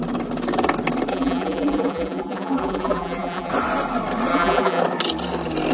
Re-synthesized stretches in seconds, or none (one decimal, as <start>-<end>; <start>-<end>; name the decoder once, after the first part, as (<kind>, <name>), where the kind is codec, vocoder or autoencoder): 1.1-3.5 (vocoder, BigVGAN v2); 4.3-4.8